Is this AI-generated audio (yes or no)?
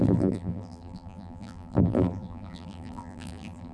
yes